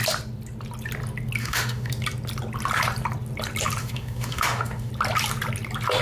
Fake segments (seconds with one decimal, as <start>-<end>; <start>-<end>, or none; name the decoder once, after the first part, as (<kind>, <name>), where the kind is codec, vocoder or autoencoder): 1.4-1.9 (autoencoder, DAC-VAE); 3.8-4.9